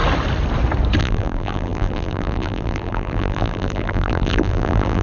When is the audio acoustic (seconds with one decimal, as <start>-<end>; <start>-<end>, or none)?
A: 0.0-1.0